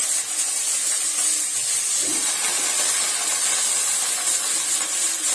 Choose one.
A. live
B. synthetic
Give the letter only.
A